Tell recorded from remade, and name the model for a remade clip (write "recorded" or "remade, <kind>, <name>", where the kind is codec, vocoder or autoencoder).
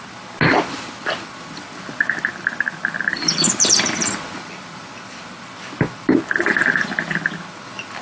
recorded